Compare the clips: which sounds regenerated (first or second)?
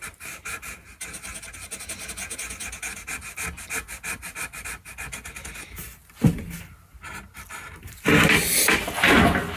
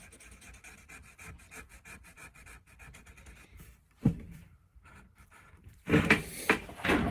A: second